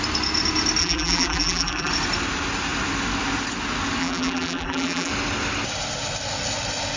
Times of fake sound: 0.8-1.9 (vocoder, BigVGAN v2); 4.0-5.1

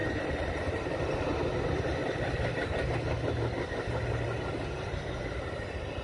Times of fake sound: 0.0-0.9 (vocoder, BigVGAN v2); 2.0-2.9

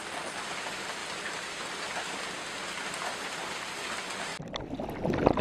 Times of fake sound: none

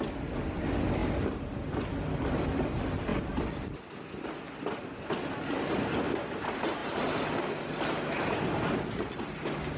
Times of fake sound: none

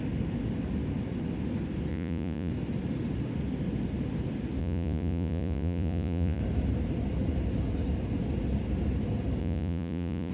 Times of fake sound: 1.9-2.5 (vocoder, Vocos); 4.6-6.4; 9.4-10.3

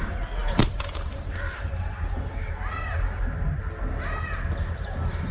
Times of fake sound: 0.4-3.6 (vocoder, BigVGAN v2)

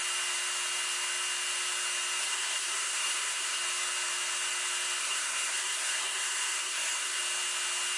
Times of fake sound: 2.2-3.6 (codec, SNAC); 5.0-7.2

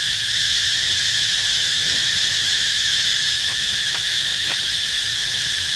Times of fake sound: 0.0-5.8 (autoencoder, DAC-VAE)